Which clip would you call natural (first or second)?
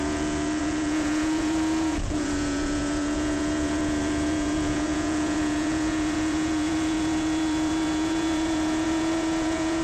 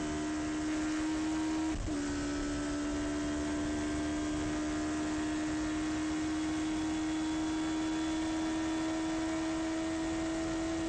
second